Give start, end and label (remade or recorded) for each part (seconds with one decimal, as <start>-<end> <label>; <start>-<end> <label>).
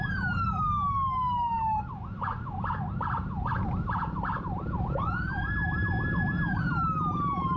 0.0-1.9 recorded; 1.9-2.6 remade; 2.6-7.6 recorded